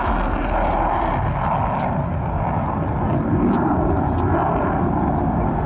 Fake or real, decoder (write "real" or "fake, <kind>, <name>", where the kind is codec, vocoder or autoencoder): real